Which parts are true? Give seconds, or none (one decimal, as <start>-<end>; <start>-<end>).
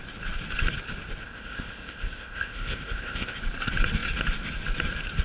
0.0-1.2; 3.4-5.2